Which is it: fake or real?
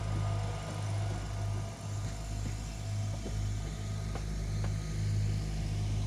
real